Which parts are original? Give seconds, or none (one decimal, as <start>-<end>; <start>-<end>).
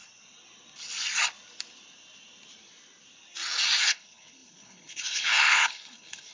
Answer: 0.0-3.8